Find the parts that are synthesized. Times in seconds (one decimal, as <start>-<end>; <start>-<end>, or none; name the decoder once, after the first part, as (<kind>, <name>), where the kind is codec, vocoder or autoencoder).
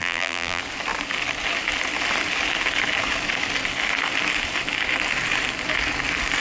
0.0-0.6 (vocoder, BigVGAN v2)